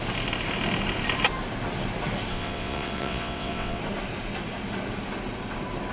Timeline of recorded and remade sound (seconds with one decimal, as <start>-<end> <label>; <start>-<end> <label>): 0.0-2.3 recorded; 2.3-3.8 remade; 3.8-5.9 recorded